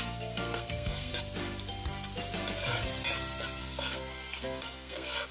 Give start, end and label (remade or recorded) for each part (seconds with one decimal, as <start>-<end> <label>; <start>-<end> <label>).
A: 0.0-1.1 remade; 1.1-3.6 recorded; 3.6-5.3 remade